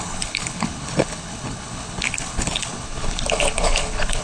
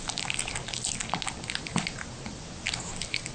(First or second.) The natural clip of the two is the second